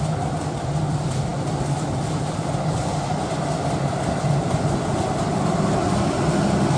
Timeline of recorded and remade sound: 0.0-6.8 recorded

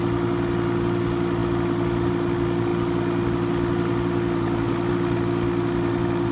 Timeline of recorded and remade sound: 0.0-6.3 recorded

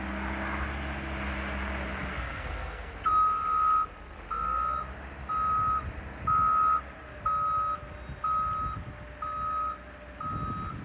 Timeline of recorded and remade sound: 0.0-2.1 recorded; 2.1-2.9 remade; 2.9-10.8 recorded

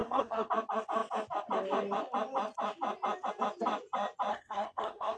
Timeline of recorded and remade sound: 0.0-0.5 remade; 0.5-4.3 recorded; 4.3-5.2 remade